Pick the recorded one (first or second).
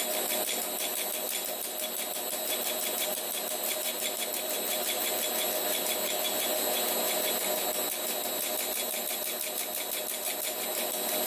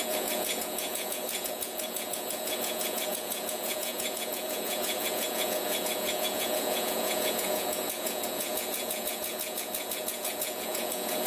first